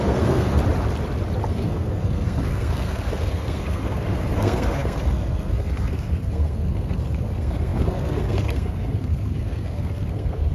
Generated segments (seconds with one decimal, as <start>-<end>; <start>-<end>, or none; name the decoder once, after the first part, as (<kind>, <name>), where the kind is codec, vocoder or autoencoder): 0.0-0.6 (codec, SNAC); 1.5-10.5

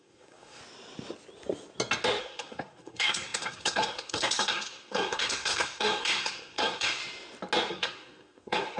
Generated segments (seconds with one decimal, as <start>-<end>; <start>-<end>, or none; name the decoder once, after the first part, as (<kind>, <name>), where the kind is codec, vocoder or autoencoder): 0.0-0.6 (codec, SNAC); 2.2-7.0; 7.7-8.8

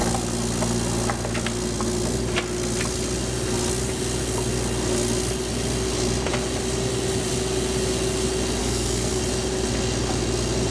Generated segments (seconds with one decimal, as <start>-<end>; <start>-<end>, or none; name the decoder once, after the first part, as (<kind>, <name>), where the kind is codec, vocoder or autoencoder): 8.6-9.2 (codec, SNAC)

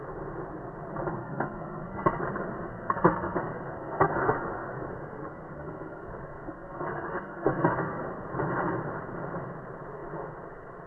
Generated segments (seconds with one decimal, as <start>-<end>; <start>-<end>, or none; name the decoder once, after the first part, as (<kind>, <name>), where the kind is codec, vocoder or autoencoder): 1.2-2.2 (codec, SNAC); 2.7-8.0

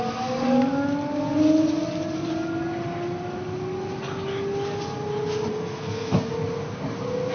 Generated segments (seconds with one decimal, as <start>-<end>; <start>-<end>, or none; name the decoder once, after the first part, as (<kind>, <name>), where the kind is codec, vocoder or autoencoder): 5.5-6.3 (codec, SNAC)

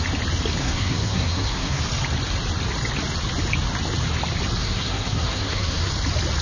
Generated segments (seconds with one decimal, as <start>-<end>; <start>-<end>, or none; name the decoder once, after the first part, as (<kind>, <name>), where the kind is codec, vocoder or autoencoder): 0.6-1.8 (codec, SNAC); 4.6-5.9

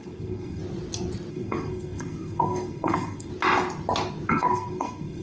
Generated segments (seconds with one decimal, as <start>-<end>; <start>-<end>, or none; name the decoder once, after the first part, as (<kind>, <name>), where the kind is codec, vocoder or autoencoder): 0.0-0.6 (codec, SNAC); 1.3-3.3; 4.3-5.2

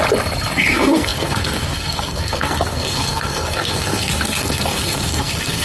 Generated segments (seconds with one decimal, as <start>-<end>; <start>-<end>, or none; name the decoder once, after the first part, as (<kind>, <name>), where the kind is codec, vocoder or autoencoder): 0.7-5.6 (codec, SNAC)